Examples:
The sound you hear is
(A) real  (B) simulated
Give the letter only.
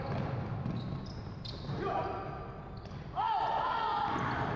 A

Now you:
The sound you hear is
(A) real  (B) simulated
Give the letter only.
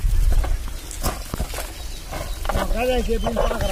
A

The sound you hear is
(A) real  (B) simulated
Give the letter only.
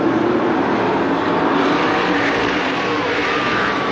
B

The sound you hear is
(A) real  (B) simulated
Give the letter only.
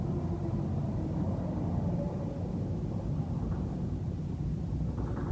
A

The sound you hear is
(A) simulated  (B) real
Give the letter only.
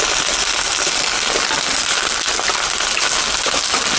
B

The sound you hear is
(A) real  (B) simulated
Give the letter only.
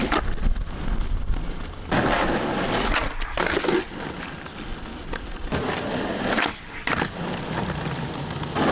B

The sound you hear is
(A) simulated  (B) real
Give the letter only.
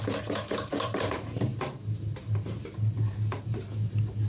A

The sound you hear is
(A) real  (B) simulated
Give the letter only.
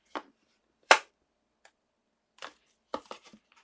B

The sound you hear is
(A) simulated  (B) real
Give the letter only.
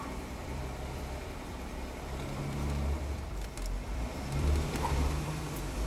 A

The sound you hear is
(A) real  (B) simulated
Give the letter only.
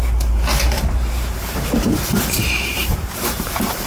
B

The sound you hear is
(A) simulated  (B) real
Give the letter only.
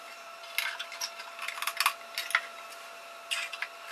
B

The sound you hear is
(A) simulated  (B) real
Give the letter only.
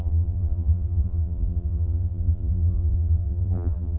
A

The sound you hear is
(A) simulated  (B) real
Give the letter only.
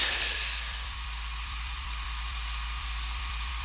A